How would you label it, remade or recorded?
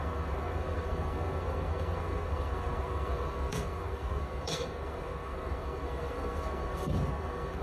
remade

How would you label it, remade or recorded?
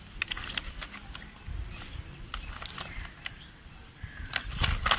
recorded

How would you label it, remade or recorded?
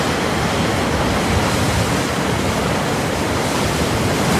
recorded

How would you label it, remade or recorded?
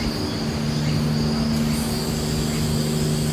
recorded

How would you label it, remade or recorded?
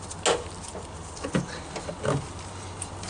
recorded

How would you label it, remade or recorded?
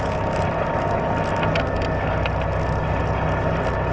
recorded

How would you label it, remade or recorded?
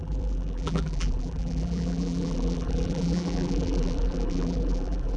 remade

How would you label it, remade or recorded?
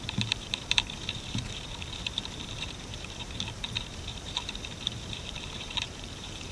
remade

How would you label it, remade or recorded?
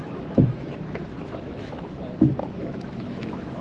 remade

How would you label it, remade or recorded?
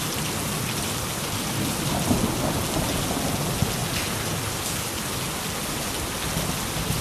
recorded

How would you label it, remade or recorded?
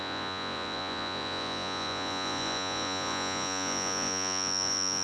remade